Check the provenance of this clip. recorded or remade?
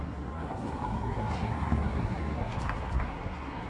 remade